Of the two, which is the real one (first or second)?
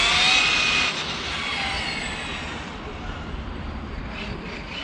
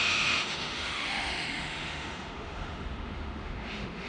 first